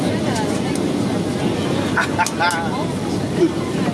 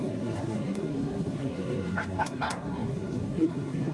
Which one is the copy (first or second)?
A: second